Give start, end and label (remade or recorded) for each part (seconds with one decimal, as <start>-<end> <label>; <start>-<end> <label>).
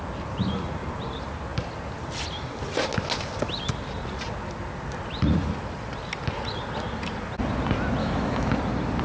0.0-8.0 recorded; 8.0-8.5 remade; 8.5-9.0 recorded